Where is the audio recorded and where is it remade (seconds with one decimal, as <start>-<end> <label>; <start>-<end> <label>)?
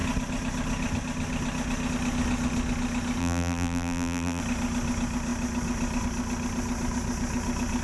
0.0-3.2 recorded; 3.2-4.4 remade; 4.4-7.8 recorded